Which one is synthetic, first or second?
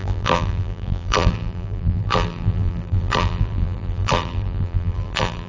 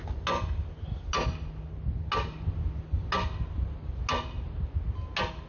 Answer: first